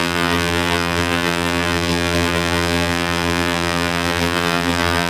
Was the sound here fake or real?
fake